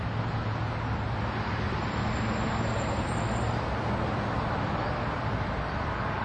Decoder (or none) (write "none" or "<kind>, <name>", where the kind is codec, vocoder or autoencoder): none